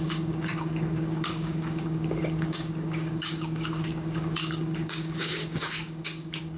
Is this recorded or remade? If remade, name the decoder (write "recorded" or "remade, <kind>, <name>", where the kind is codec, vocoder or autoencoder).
remade, codec, DAC